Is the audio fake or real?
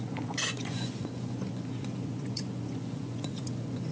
fake